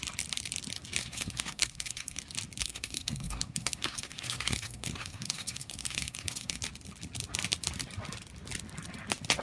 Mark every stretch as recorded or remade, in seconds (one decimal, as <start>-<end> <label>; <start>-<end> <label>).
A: 0.0-1.0 recorded; 1.0-2.2 remade; 2.2-2.6 recorded; 2.6-6.6 remade; 6.6-9.4 recorded